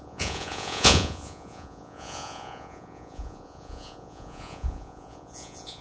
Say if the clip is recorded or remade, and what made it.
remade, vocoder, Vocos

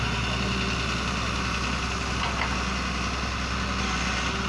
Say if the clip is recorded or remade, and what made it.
recorded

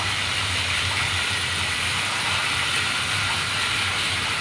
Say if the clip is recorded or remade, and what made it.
recorded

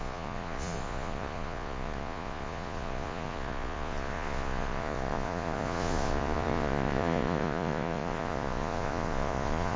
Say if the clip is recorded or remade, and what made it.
remade, vocoder, Vocos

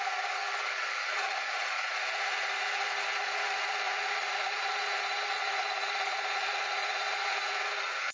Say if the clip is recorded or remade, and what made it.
remade, vocoder, Vocos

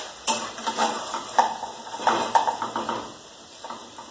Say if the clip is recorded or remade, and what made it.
recorded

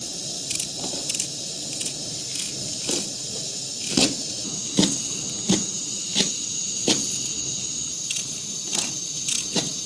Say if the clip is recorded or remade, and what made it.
recorded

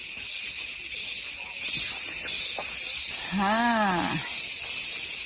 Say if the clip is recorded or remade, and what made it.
recorded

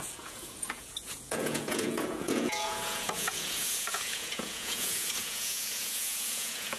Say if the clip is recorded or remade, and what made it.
remade, vocoder, Vocos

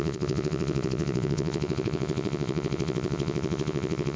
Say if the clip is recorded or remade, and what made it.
remade, vocoder, Vocos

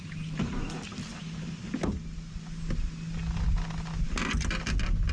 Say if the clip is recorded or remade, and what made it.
recorded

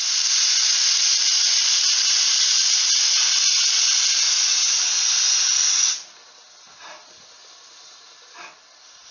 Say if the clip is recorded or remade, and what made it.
recorded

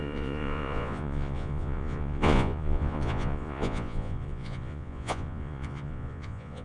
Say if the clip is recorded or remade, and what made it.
remade, vocoder, Vocos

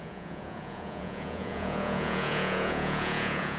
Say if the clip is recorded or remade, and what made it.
remade, vocoder, Vocos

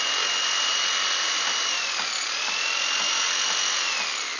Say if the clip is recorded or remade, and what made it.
recorded